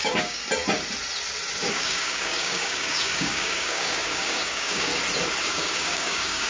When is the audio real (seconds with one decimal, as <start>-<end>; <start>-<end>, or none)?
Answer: 0.4-1.7; 4.9-5.5